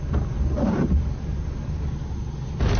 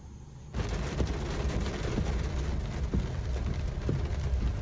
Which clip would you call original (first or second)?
second